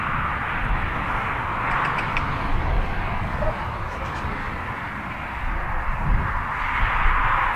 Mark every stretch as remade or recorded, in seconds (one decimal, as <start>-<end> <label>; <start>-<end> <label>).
0.0-2.1 recorded; 2.1-4.5 remade; 4.5-7.6 recorded